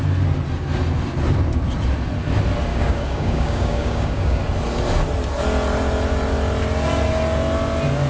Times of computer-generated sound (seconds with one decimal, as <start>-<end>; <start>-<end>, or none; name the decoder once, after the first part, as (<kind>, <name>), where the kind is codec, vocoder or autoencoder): 2.7-4.4 (codec, DAC)